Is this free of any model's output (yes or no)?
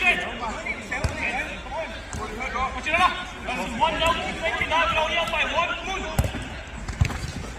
yes